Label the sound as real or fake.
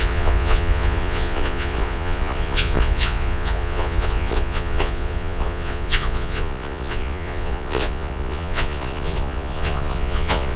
fake